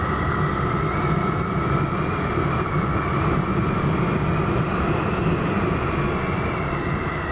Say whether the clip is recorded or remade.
recorded